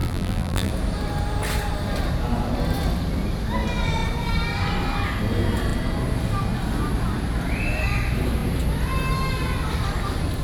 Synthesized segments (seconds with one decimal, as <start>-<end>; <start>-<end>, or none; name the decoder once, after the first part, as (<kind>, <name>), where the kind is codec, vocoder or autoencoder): 0.0-0.7 (vocoder, BigVGAN v2)